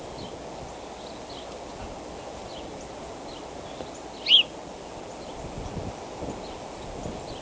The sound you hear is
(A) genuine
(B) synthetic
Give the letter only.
A